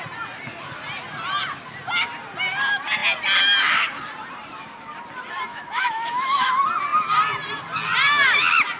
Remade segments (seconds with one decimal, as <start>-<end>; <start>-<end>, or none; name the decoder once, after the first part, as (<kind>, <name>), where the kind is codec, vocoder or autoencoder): 5.5-6.5 (autoencoder, DAC-VAE)